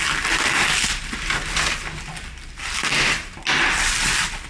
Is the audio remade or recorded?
recorded